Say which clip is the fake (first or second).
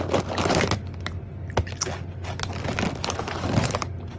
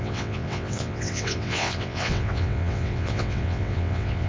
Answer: second